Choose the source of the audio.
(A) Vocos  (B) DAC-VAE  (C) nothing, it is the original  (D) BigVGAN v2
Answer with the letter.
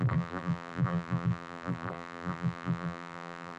D